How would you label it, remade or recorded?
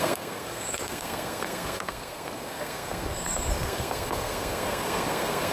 remade